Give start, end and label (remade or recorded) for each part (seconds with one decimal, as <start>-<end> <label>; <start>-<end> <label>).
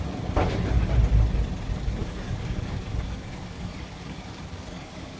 0.0-2.0 recorded; 2.0-5.2 remade